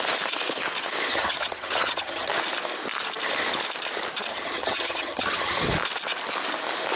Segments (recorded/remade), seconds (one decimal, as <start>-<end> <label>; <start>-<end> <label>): 0.0-1.1 recorded; 1.1-2.3 remade; 2.3-4.3 recorded; 4.3-5.7 remade; 5.7-7.0 recorded